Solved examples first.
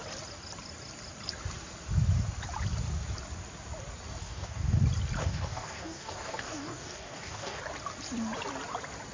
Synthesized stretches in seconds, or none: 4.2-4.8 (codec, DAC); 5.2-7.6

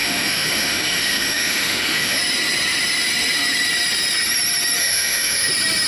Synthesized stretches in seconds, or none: 0.0-2.2 (autoencoder, DAC-VAE); 4.8-5.5

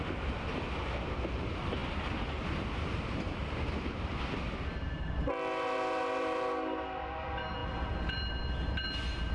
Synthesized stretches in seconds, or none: none

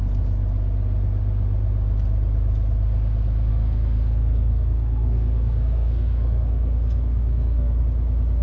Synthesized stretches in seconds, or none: 3.5-7.8 (codec, SNAC)

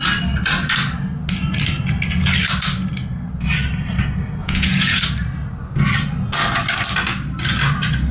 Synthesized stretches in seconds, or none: 4.4-5.0 (vocoder, Vocos)

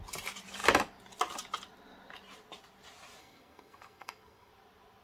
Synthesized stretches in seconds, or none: 3.2-4.5 (codec, SNAC)